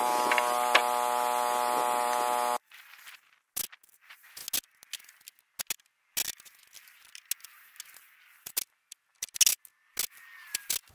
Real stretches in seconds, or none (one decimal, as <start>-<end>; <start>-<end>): 0.0-10.9